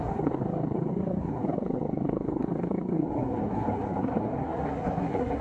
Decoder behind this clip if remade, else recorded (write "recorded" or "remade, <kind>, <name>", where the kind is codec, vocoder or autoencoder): remade, codec, SNAC